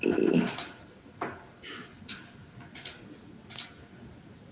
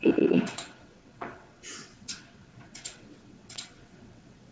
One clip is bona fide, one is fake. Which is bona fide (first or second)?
first